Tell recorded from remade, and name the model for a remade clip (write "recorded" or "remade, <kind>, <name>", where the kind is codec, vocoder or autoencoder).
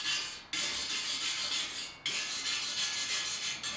recorded